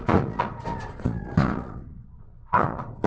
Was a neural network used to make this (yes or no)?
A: yes